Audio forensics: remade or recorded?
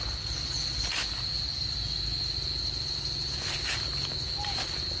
recorded